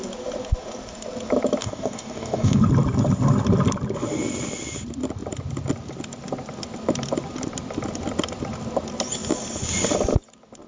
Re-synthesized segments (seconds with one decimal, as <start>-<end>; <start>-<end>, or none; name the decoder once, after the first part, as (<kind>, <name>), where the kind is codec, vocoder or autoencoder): 1.6-2.6 (codec, DAC)